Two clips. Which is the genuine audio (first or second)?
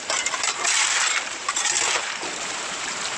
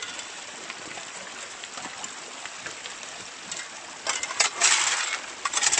second